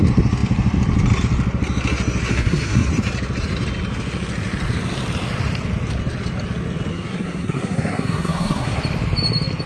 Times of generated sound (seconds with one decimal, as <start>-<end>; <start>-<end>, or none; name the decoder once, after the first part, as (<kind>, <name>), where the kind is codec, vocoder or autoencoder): 2.3-2.9 (codec, SNAC); 6.9-8.8